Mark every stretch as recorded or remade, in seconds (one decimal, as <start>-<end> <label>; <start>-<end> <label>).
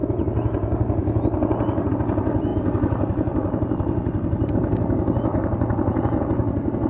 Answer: 0.0-1.9 recorded; 1.9-6.9 remade